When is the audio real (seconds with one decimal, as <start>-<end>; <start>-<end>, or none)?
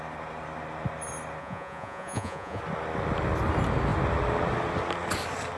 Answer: 0.0-1.4; 2.6-5.6